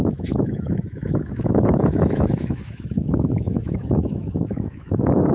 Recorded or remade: remade